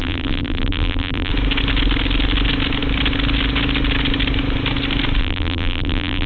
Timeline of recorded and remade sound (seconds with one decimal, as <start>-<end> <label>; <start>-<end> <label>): 0.0-1.3 remade; 1.3-5.2 recorded; 5.2-6.3 remade